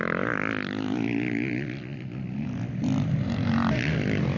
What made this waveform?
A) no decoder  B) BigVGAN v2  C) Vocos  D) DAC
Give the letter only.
A